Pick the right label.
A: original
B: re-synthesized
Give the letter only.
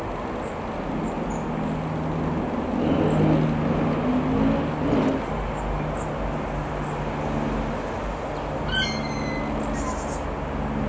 A